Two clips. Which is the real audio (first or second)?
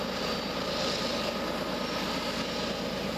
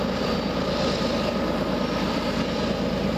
first